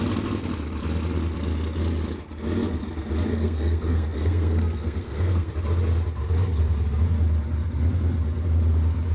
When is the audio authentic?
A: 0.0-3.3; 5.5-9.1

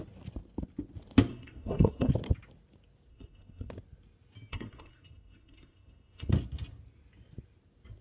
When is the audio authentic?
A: 0.0-1.3; 2.1-3.1; 3.7-4.5; 6.3-8.0

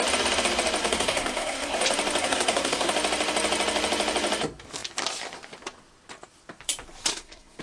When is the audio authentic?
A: 0.0-0.8; 1.8-2.2; 2.9-7.1